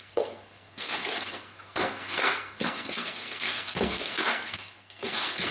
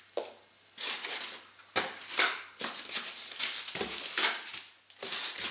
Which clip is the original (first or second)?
second